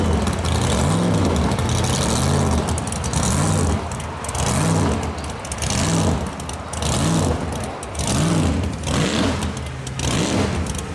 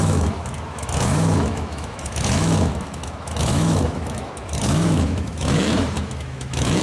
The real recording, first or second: first